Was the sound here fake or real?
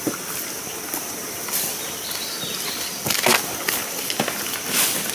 real